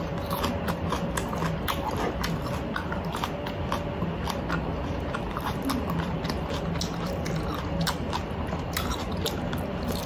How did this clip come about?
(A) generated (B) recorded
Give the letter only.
B